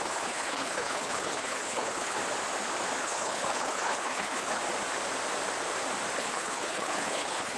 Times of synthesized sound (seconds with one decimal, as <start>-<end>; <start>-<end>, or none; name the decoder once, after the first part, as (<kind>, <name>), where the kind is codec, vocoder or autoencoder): 0.0-2.2 (codec, HILCodec); 3.0-4.6; 6.2-7.6